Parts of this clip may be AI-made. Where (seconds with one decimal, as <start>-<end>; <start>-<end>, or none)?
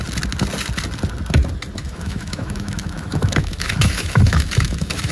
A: 1.8-5.1